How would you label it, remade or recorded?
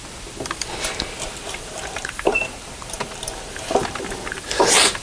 remade